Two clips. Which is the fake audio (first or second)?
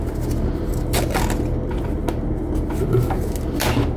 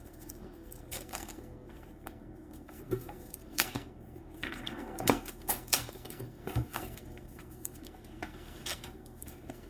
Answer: second